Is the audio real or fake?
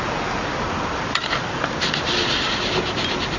real